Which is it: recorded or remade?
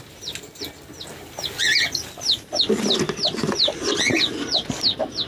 recorded